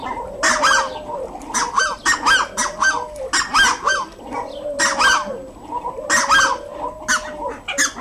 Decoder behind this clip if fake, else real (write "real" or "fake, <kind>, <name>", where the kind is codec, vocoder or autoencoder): real